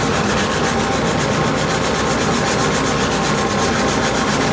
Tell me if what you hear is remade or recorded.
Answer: recorded